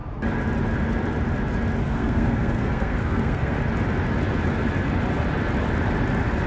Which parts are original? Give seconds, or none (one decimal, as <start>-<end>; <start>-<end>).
0.0-1.8; 3.6-6.5